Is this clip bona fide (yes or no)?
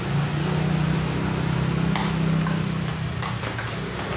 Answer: yes